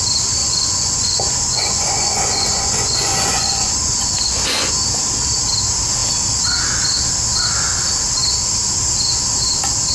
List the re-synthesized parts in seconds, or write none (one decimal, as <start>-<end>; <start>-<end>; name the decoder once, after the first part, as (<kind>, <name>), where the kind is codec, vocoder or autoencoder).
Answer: 0.4-4.7 (vocoder, Vocos)